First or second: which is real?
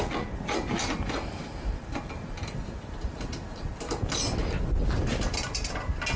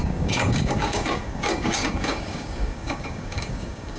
first